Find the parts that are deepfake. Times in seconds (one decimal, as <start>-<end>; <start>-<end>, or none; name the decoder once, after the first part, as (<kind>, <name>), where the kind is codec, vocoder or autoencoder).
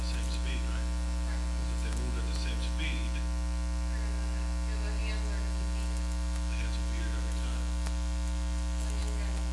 none